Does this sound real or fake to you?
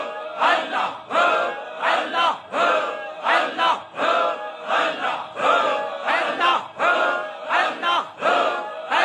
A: real